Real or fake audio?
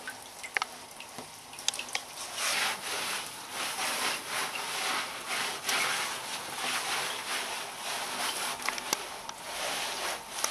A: real